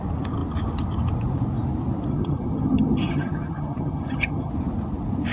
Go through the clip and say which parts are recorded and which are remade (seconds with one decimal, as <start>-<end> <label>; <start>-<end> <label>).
0.0-2.1 recorded; 2.1-4.5 remade; 4.5-5.3 recorded

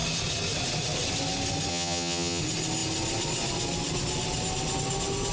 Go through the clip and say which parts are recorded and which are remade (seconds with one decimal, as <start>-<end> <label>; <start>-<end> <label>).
0.0-1.7 recorded; 1.7-2.4 remade; 2.4-5.3 recorded

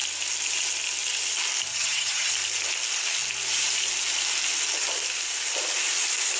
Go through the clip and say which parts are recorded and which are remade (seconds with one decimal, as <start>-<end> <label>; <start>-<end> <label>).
0.0-1.7 recorded; 1.7-2.3 remade; 2.3-6.4 recorded

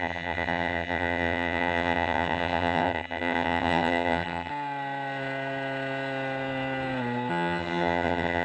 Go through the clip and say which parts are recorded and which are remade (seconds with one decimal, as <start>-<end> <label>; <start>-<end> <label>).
0.0-4.5 remade; 4.5-7.3 recorded; 7.3-8.4 remade

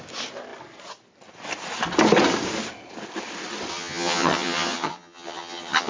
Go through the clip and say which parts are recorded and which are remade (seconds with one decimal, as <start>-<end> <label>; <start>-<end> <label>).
0.0-3.7 recorded; 3.7-5.9 remade